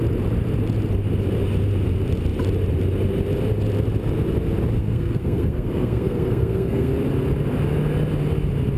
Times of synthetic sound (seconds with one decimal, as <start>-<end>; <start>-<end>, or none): 4.8-6.9